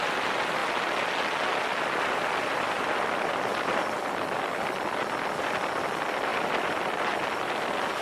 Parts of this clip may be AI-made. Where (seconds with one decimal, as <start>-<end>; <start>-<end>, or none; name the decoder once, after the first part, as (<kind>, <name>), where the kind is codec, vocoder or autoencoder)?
0.0-0.6 (vocoder, BigVGAN v2); 1.6-8.0